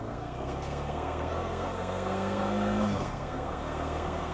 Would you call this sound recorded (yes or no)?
no